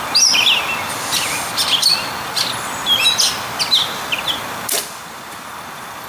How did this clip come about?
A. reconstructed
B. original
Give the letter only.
B